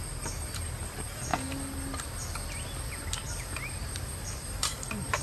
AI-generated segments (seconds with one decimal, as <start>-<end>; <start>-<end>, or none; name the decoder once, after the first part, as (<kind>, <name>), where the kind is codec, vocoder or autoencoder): 0.0-1.3 (vocoder, BigVGAN v2); 4.4-5.2